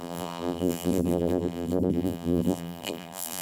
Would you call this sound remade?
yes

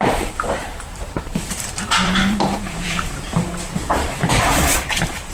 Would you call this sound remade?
yes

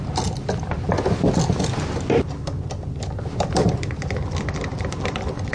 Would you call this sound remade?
no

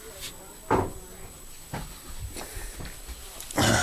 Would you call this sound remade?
no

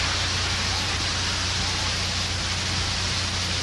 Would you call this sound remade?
no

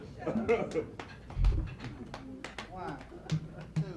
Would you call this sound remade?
no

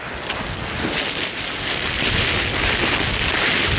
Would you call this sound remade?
no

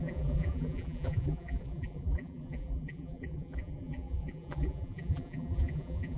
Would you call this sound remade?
yes